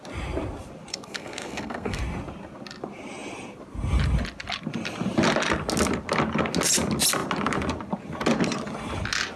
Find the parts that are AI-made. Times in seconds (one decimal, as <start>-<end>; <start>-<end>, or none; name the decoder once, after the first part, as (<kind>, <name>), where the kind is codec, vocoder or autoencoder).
0.9-2.0 (codec, SNAC)